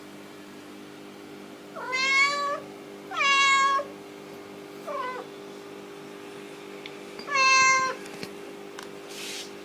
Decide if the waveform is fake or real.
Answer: real